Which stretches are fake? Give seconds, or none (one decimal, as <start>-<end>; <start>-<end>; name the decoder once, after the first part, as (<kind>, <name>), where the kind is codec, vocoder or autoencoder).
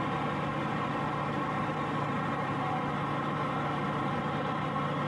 0.6-2.8 (vocoder, BigVGAN v2); 4.0-4.6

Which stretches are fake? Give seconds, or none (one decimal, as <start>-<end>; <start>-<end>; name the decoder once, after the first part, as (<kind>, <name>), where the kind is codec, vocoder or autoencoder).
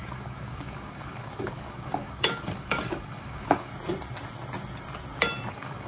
0.0-3.7 (codec, DAC); 5.5-5.9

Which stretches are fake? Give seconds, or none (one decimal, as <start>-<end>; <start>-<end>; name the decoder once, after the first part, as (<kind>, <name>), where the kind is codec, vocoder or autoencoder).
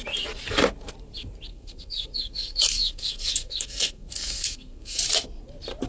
1.5-5.0 (codec, SNAC)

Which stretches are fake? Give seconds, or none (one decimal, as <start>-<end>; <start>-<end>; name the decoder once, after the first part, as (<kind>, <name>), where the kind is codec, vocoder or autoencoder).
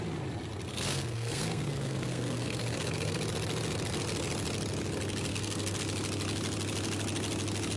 0.7-3.2 (codec, SNAC); 5.3-5.8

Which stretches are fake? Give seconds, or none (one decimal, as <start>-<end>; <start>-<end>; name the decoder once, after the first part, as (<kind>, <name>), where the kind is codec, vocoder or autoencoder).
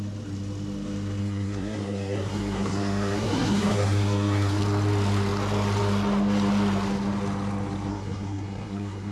1.2-4.6 (codec, SNAC); 7.9-9.1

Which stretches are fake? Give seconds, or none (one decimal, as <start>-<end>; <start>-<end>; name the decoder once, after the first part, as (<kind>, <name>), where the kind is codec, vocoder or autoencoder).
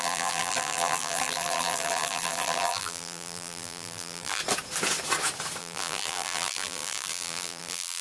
0.0-4.4 (vocoder, BigVGAN v2); 5.6-8.0